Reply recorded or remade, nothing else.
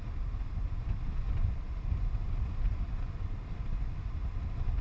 recorded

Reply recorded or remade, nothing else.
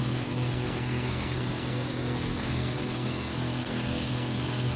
remade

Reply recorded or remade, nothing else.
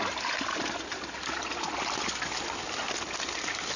recorded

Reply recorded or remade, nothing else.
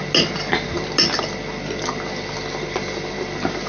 recorded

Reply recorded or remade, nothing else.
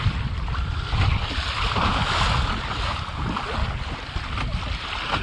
recorded